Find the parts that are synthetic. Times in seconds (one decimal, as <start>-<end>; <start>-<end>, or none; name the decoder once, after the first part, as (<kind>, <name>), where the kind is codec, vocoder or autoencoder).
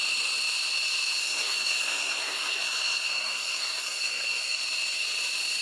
1.2-4.6 (codec, SNAC)